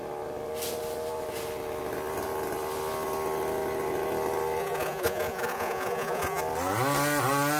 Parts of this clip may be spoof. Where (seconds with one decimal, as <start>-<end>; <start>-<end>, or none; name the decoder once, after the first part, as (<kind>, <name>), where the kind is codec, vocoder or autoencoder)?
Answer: 4.6-6.4 (vocoder, Vocos)